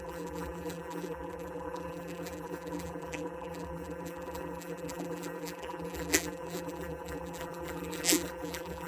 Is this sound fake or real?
fake